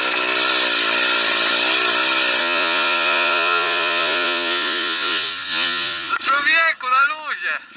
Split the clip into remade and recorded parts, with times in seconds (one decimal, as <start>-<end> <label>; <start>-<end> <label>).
0.0-2.4 recorded; 2.4-6.1 remade; 6.1-7.8 recorded